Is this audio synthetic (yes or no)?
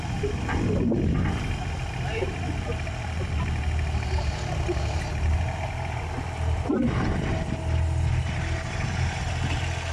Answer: no